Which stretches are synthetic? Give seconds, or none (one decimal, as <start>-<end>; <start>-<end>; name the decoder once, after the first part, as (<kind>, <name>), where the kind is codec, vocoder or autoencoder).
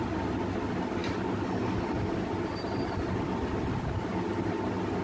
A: none